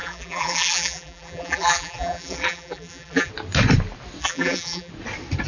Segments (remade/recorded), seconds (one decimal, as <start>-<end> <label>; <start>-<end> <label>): 0.0-3.3 remade; 3.3-4.2 recorded; 4.2-4.9 remade; 4.9-5.5 recorded